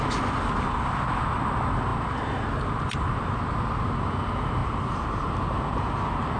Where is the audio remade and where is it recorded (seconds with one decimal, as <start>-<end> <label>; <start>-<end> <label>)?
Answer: 0.0-4.6 recorded; 4.6-5.3 remade; 5.3-6.4 recorded